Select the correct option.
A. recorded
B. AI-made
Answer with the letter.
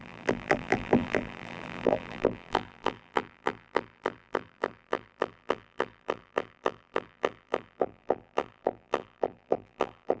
B